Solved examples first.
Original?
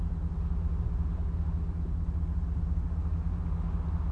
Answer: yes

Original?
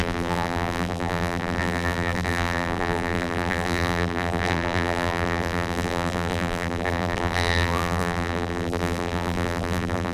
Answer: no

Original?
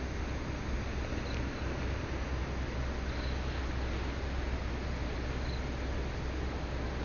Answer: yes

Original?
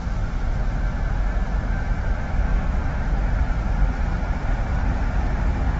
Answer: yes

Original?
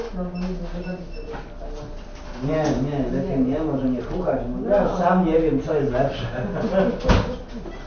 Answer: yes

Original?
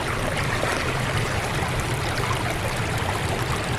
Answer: yes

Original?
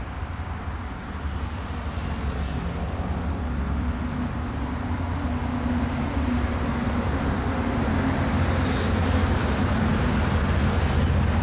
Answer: yes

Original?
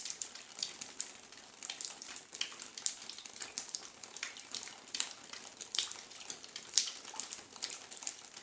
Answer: yes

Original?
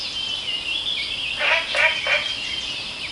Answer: yes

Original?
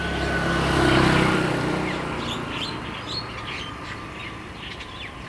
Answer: yes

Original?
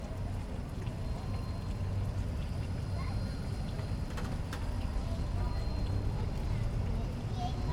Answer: yes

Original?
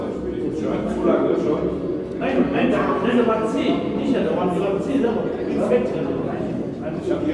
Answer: no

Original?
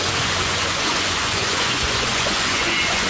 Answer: no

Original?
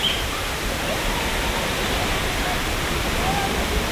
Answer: yes